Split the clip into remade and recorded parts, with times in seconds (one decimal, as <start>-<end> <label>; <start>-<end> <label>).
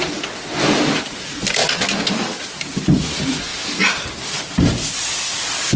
0.0-5.8 recorded